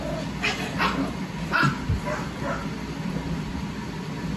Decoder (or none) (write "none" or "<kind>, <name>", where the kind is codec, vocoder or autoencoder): none